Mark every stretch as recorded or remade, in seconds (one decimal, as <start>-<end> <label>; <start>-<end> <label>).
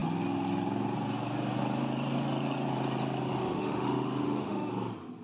0.0-3.3 recorded; 3.3-4.7 remade; 4.7-5.2 recorded